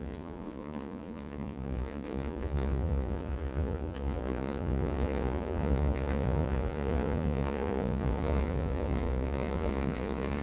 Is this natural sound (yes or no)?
no